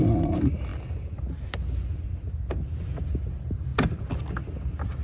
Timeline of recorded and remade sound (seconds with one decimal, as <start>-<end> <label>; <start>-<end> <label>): 0.0-5.0 recorded

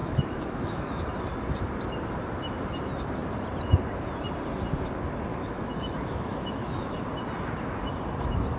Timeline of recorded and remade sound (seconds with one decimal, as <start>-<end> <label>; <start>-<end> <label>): 0.0-1.1 remade; 1.1-5.3 recorded; 5.3-7.0 remade; 7.0-8.6 recorded

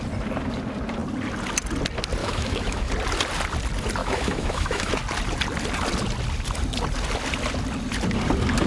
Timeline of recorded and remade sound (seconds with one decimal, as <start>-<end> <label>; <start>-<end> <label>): 0.0-2.2 recorded; 2.2-2.9 remade; 2.9-4.0 recorded; 4.0-4.9 remade; 4.9-8.7 recorded

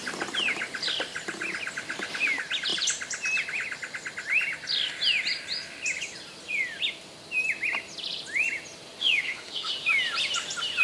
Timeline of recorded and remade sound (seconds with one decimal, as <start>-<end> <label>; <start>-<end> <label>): 0.0-9.0 recorded; 9.0-9.7 remade; 9.7-10.8 recorded

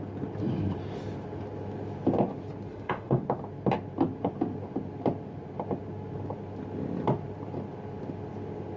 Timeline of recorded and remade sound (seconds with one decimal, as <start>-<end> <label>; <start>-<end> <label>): 0.0-2.7 recorded; 2.7-3.2 remade; 3.2-8.8 recorded

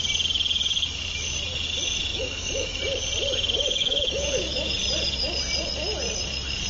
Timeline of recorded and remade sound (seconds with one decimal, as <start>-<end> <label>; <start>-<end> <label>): 0.0-2.1 recorded; 2.1-2.8 remade; 2.8-3.6 recorded; 3.6-4.8 remade; 4.8-6.7 recorded

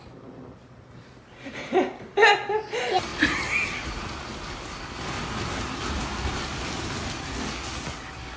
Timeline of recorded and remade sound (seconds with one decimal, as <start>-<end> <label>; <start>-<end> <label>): 0.0-8.4 recorded

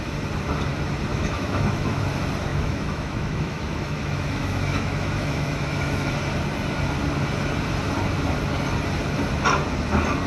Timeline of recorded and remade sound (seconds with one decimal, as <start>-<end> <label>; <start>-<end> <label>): 0.0-1.1 recorded; 1.1-2.0 remade; 2.0-2.5 recorded; 2.5-6.1 remade; 6.1-10.3 recorded